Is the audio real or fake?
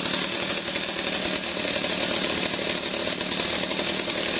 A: real